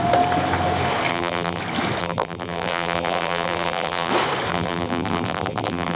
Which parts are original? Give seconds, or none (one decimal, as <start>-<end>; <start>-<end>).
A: 0.0-1.1; 1.6-2.0; 4.1-4.5